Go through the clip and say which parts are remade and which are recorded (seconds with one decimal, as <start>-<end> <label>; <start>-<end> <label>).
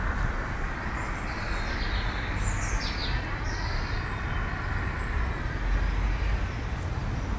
0.0-7.4 recorded